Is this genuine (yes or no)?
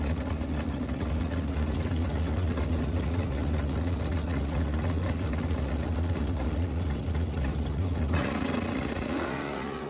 no